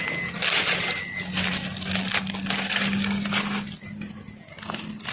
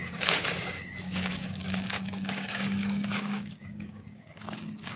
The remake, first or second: second